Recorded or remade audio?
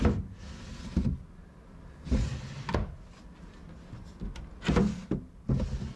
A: recorded